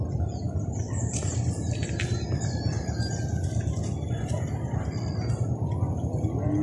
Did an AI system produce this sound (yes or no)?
no